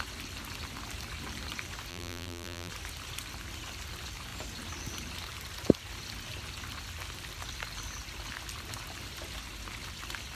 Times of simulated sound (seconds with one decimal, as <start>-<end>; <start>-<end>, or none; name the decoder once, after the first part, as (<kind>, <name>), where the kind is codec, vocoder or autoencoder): 1.9-2.7 (vocoder, BigVGAN v2)

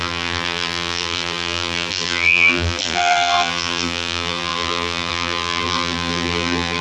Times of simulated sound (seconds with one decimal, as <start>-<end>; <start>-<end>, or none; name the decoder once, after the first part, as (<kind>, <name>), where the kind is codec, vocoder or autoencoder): 0.0-6.8 (vocoder, BigVGAN v2)

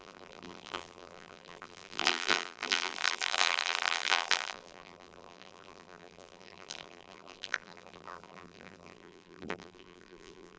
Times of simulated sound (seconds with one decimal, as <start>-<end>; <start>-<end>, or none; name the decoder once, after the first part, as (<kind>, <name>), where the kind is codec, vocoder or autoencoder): 0.0-10.6 (vocoder, BigVGAN v2)

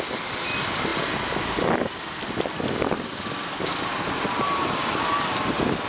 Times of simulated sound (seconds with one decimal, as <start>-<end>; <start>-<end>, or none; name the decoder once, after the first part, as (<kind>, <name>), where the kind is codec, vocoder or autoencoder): none

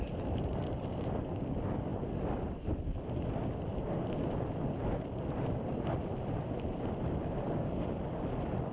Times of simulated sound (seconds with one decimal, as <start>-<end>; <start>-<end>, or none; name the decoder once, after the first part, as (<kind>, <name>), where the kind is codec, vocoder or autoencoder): 0.0-1.9 (vocoder, BigVGAN v2); 4.6-8.7

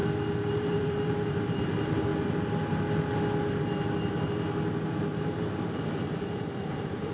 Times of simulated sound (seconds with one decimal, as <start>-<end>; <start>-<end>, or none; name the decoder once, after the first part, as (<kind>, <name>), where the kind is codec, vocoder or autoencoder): 0.5-2.1 (vocoder, BigVGAN v2); 4.9-7.1